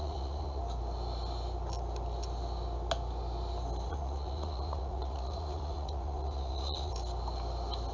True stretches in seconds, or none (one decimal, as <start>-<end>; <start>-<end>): 0.6-3.9; 6.9-7.9